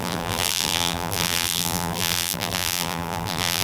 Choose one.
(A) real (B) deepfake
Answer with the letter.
B